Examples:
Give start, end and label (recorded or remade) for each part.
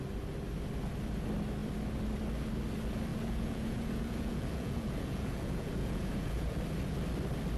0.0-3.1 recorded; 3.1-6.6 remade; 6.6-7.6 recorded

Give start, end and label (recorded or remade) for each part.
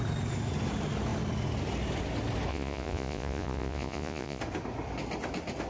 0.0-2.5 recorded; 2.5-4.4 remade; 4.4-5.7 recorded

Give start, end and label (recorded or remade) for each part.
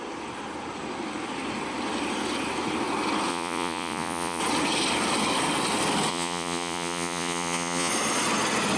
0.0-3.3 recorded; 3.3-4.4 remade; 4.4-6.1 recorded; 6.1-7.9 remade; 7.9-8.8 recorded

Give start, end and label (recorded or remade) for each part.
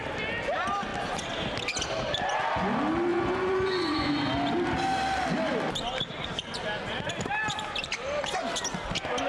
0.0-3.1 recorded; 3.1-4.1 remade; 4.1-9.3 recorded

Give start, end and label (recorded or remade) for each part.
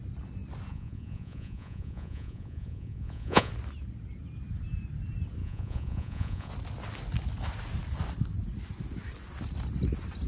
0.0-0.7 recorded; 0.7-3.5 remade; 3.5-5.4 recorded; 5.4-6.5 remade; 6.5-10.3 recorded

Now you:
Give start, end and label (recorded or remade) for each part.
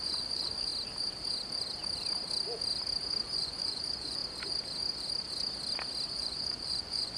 0.0-0.7 remade; 0.7-3.3 recorded; 3.3-4.2 remade; 4.2-6.1 recorded; 6.1-7.2 remade